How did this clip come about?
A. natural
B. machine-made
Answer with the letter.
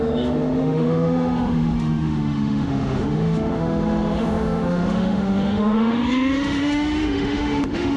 B